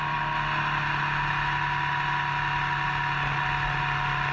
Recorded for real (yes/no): yes